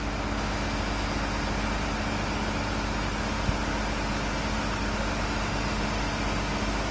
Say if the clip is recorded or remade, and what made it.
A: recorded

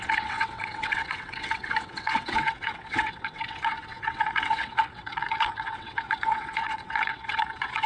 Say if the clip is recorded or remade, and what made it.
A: remade, vocoder, WaveNeXt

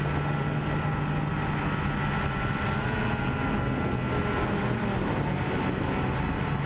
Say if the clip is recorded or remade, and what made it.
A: recorded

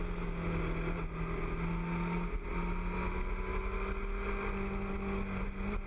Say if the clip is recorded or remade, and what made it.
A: recorded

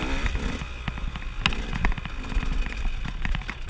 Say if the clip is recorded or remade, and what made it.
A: recorded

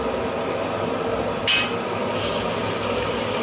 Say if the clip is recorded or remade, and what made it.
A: recorded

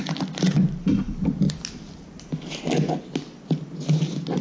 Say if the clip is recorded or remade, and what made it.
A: recorded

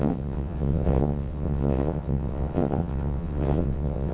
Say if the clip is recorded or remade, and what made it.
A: remade, vocoder, WaveNeXt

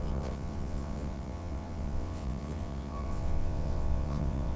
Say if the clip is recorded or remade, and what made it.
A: remade, vocoder, WaveNeXt